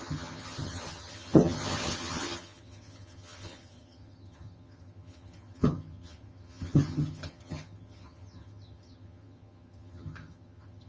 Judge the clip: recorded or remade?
remade